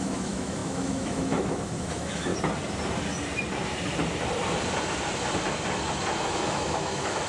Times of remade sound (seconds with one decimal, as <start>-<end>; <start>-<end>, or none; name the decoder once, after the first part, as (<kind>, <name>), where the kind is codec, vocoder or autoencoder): 0.0-2.3 (autoencoder, DAC-VAE); 6.2-7.3